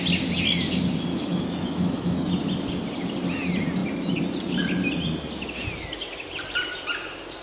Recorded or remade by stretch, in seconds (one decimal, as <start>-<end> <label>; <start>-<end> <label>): 0.0-1.1 recorded; 1.1-2.3 remade; 2.3-7.4 recorded